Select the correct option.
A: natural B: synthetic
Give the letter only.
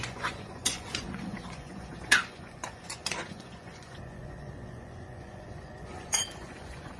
B